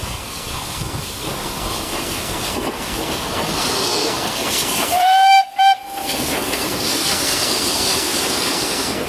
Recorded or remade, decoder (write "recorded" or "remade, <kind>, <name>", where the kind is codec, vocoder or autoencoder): remade, codec, SNAC